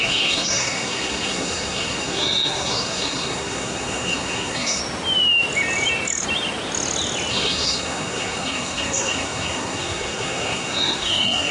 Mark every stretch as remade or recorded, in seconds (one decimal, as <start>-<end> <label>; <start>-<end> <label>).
0.0-4.8 remade; 4.8-7.3 recorded; 7.3-11.5 remade